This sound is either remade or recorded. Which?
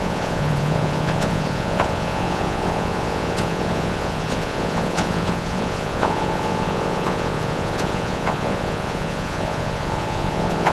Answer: remade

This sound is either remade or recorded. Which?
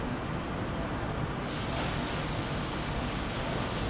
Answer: recorded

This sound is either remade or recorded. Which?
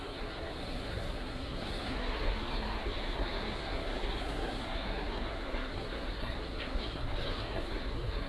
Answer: remade